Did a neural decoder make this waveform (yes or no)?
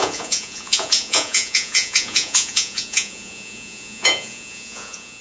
yes